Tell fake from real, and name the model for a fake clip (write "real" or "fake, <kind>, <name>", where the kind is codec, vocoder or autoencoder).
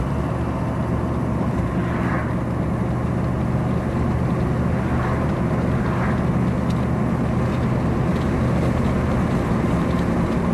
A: real